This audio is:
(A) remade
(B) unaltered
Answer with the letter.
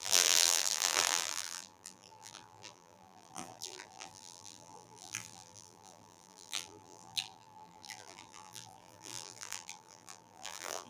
A